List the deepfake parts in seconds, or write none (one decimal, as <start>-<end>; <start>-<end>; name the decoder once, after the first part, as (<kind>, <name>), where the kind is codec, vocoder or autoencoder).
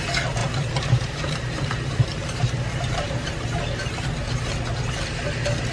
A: 0.4-3.8 (vocoder, BigVGAN v2)